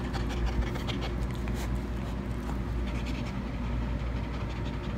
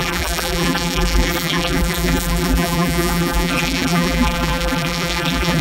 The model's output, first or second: second